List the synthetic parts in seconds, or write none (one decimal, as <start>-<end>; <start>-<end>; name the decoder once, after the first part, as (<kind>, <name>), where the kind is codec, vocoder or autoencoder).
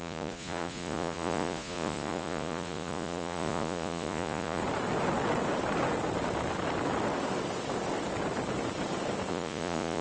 0.0-4.6 (vocoder, Vocos); 9.3-10.0